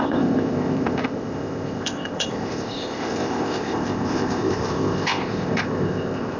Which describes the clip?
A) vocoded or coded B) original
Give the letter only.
A